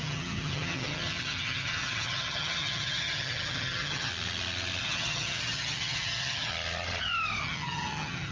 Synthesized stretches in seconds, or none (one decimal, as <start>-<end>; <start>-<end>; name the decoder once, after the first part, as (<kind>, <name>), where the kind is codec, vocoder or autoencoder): 0.0-4.1 (vocoder, HiFi-GAN); 4.8-6.5; 7.4-8.3